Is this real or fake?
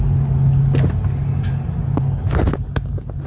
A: real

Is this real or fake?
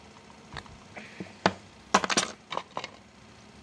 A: real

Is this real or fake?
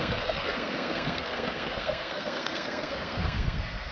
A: fake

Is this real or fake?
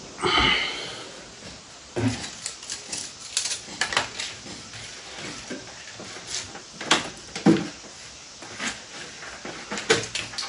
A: real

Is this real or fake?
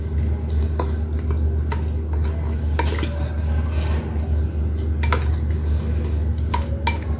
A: real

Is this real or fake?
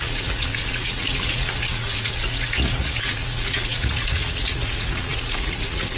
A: fake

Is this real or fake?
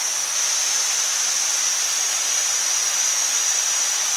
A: real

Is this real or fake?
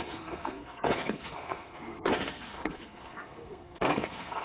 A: fake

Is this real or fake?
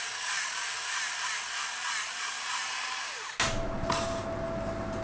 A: real